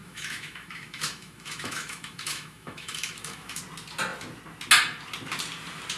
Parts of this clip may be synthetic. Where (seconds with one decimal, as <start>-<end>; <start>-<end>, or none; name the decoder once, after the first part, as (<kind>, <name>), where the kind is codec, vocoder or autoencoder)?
0.0-3.6 (autoencoder, DAC-VAE)